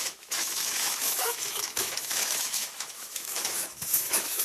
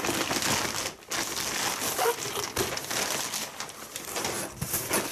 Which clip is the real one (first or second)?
second